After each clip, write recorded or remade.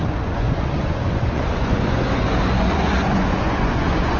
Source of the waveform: remade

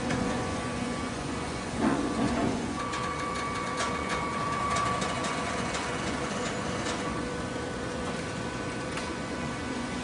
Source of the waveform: remade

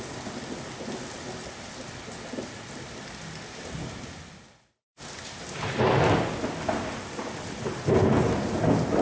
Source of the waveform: recorded